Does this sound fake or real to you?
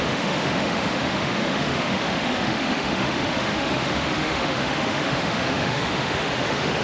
fake